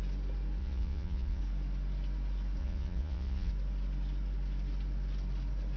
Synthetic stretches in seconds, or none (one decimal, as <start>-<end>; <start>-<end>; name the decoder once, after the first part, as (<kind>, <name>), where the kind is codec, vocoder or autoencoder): 0.6-1.4 (vocoder, Vocos); 2.6-3.5